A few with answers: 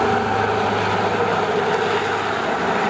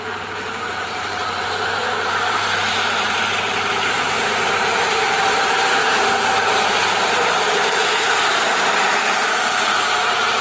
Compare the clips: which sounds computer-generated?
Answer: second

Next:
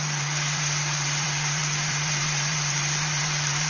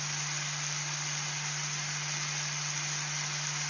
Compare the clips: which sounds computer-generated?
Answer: first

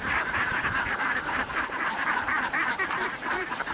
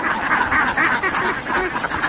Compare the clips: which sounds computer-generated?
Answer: first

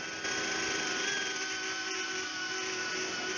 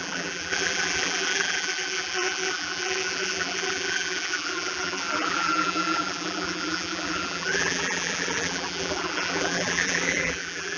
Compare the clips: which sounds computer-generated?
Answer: second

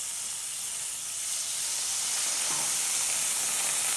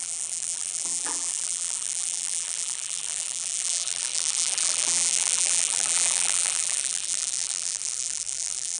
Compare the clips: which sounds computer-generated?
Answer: second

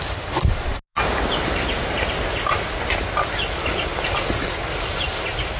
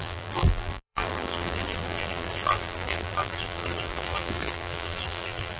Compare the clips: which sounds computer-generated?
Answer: second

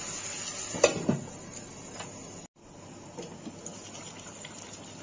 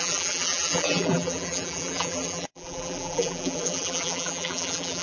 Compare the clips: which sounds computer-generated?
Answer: second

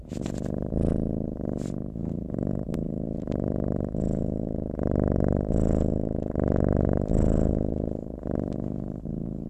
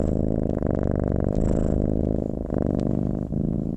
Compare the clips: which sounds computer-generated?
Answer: second